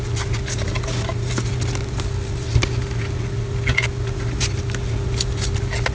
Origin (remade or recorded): recorded